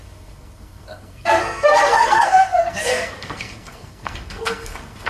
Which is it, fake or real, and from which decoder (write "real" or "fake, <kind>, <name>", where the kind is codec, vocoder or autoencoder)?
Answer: fake, codec, SNAC